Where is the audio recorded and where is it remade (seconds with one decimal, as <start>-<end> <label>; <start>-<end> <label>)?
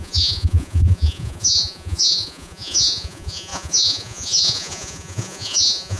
0.0-6.0 remade